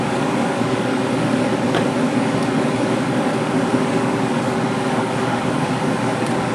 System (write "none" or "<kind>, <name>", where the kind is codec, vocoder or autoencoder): codec, DAC